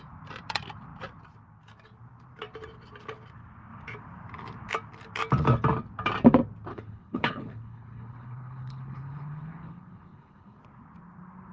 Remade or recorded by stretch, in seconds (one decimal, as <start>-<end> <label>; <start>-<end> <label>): 0.0-6.7 recorded; 6.7-10.6 remade; 10.6-11.5 recorded